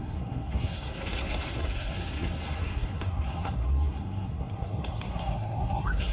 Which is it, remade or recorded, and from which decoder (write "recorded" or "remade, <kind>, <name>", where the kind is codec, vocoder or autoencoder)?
remade, codec, SNAC